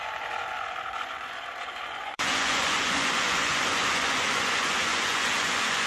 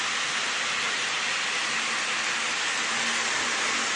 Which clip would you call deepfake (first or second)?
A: first